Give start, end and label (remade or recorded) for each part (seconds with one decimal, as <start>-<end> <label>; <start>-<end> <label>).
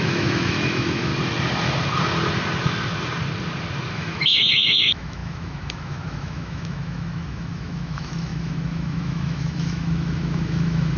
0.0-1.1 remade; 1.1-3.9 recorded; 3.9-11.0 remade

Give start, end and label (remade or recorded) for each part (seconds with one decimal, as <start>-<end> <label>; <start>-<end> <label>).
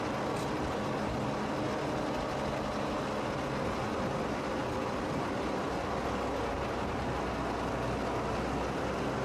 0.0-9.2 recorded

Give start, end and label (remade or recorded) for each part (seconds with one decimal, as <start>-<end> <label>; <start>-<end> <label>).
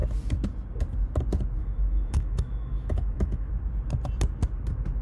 0.0-1.6 recorded; 1.6-3.5 remade; 3.5-5.0 recorded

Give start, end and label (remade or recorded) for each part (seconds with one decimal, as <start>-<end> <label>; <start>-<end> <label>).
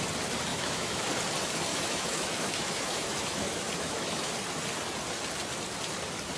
0.0-0.5 recorded; 0.5-1.1 remade; 1.1-1.7 recorded; 1.7-4.3 remade; 4.3-6.4 recorded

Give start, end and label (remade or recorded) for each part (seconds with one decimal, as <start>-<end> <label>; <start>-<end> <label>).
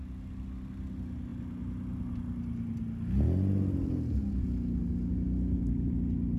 0.0-6.4 recorded